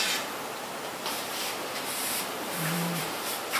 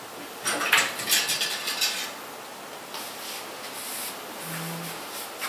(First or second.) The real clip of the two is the second